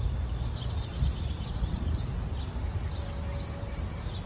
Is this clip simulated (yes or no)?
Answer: no